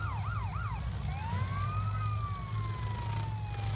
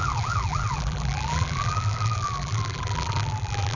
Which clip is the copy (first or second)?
second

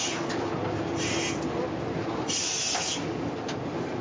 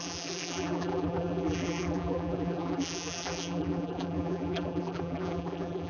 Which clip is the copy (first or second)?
second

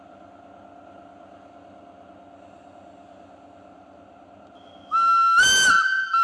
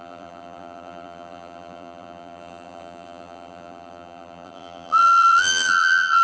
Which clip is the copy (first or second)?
second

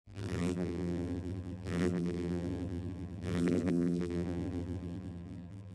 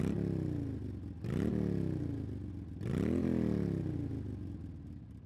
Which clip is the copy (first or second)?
first